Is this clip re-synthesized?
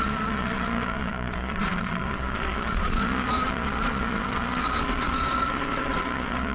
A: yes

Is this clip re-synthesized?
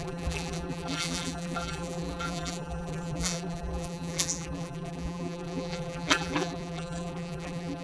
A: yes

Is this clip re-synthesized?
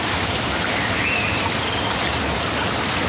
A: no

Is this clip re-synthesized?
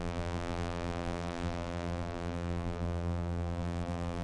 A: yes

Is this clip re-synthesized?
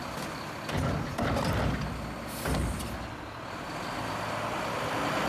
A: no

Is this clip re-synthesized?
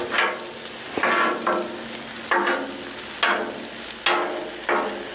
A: no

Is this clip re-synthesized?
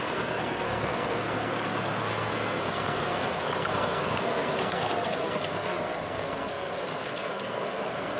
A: yes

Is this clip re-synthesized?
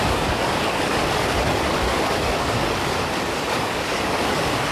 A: yes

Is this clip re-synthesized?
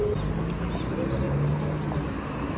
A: no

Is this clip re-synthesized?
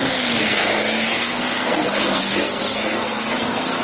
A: yes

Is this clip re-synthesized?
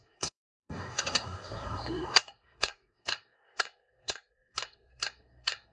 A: yes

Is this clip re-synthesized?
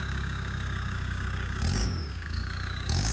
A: yes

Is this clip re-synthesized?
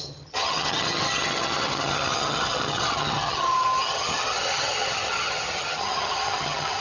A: yes